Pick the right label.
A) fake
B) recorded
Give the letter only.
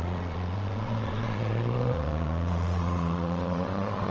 A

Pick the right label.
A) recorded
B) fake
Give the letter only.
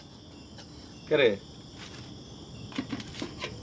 A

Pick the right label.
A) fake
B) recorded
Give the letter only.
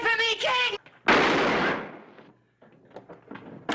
B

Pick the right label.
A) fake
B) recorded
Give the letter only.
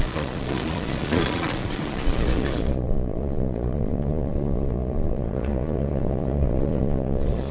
A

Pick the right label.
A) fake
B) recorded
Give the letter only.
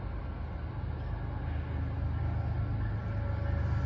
B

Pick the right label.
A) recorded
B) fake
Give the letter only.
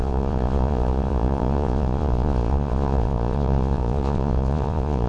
B